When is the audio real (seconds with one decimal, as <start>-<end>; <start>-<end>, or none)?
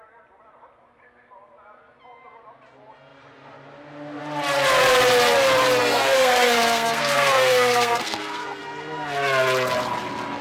0.0-5.8; 8.6-10.4